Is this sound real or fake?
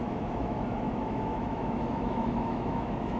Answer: fake